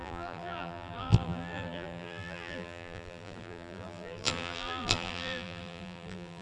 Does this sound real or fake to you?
fake